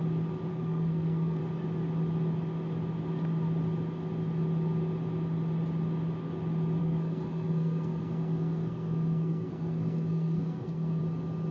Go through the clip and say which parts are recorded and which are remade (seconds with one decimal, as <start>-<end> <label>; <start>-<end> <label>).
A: 0.0-0.5 recorded; 0.5-1.4 remade; 1.4-6.8 recorded; 6.8-11.0 remade; 11.0-11.5 recorded